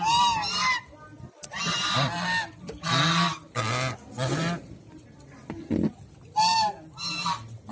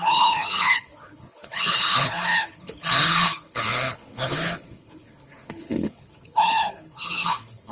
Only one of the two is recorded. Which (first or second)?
first